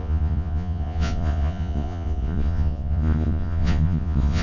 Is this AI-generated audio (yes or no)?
yes